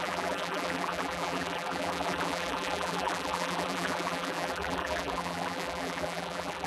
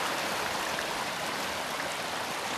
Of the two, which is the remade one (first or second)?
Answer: first